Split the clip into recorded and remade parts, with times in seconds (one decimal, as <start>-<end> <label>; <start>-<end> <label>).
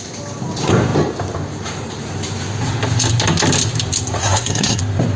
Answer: 0.0-4.2 recorded; 4.2-4.8 remade; 4.8-5.2 recorded